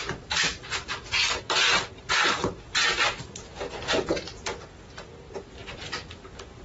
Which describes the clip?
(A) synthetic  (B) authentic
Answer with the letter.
B